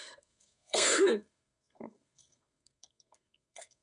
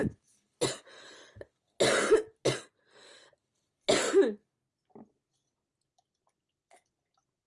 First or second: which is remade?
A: first